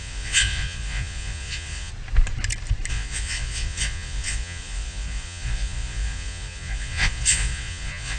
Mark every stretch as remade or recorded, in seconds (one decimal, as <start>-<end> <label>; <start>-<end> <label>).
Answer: 0.0-1.9 remade; 1.9-2.9 recorded; 2.9-8.2 remade